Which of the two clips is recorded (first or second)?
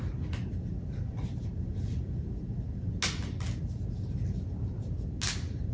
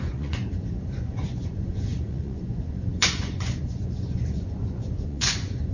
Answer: first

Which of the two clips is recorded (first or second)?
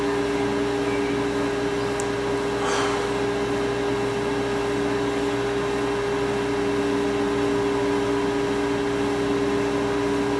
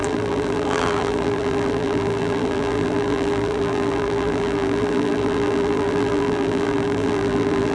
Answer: first